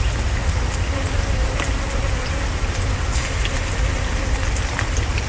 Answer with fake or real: real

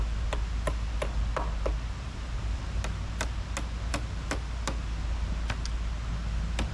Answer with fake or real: real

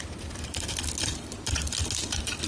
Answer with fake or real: real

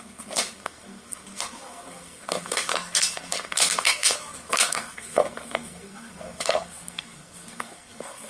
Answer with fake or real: fake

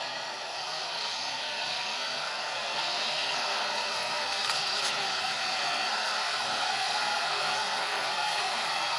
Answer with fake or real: fake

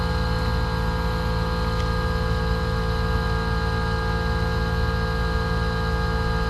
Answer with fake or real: real